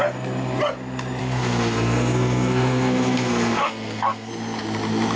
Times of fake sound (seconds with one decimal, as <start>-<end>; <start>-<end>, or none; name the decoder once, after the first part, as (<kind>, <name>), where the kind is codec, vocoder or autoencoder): 1.2-4.3 (codec, SNAC)